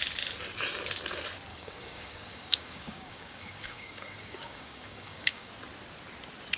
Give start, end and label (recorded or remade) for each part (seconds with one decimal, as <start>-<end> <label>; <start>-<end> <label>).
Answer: 0.0-1.5 recorded; 1.5-5.5 remade; 5.5-6.6 recorded

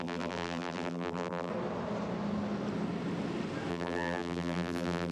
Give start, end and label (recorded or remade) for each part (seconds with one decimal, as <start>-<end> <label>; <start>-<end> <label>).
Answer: 0.0-1.5 remade; 1.5-3.7 recorded; 3.7-5.1 remade

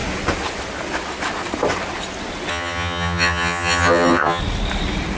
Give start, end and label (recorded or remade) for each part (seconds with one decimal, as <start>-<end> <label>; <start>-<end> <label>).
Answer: 0.0-2.5 recorded; 2.5-4.4 remade; 4.4-5.2 recorded

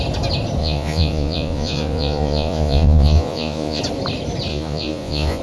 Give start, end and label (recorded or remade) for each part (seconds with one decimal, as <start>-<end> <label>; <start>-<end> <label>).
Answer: 0.0-0.6 recorded; 0.6-3.8 remade; 3.8-4.5 recorded; 4.5-5.4 remade

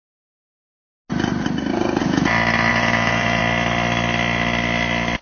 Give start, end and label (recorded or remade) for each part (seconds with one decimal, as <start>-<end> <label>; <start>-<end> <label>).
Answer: 0.0-1.7 recorded; 1.7-2.3 remade; 2.3-2.7 recorded; 2.7-3.4 remade; 3.4-5.2 recorded